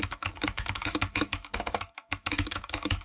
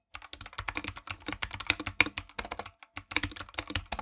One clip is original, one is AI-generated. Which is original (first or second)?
second